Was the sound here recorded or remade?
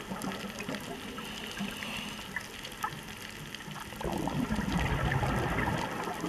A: recorded